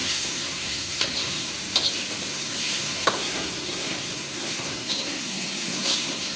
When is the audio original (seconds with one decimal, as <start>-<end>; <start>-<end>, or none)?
1.5-2.3